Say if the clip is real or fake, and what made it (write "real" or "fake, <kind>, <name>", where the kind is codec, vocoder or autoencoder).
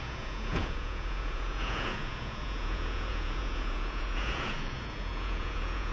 fake, vocoder, Vocos